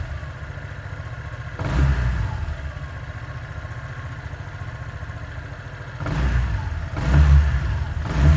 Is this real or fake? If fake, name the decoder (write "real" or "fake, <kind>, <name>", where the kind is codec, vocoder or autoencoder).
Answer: real